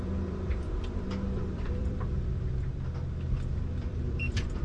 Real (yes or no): no